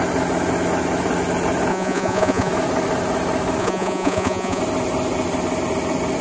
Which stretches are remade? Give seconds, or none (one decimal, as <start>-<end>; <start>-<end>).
1.7-2.5; 3.6-4.6